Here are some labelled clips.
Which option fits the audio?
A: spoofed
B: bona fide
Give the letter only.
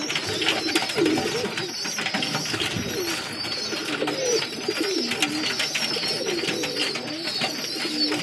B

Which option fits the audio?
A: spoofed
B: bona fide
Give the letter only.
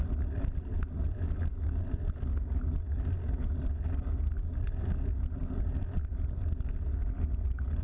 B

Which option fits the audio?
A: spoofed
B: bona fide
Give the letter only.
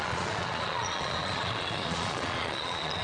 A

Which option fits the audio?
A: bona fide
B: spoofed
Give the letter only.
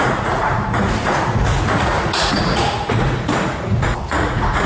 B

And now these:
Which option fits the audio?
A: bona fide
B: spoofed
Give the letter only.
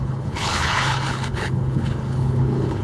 B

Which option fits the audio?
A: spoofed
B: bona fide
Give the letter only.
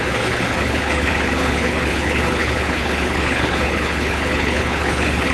A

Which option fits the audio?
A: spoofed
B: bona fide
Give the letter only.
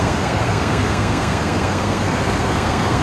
A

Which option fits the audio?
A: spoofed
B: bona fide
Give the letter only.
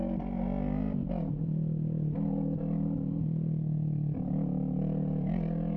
B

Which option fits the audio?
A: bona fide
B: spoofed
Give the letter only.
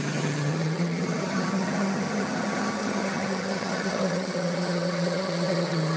B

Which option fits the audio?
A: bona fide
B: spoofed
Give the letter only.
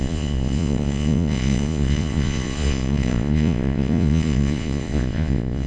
B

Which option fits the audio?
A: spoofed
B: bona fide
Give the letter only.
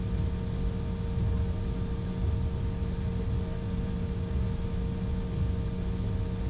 B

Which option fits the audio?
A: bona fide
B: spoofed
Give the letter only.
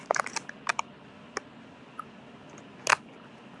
A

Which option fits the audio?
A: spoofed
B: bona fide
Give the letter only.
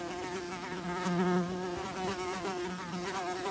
A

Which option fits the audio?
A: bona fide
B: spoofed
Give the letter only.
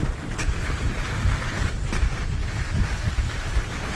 A